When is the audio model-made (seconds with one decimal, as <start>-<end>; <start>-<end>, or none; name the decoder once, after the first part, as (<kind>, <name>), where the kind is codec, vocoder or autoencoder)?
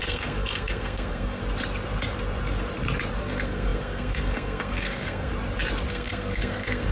0.0-1.4 (codec, SNAC); 3.2-5.3; 5.9-6.9